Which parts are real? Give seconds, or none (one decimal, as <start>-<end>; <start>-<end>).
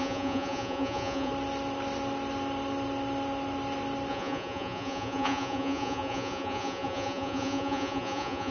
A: 1.3-4.1